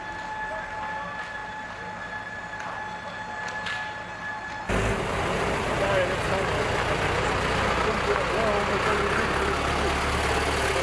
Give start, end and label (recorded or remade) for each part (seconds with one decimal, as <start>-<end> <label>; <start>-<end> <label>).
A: 0.0-10.8 recorded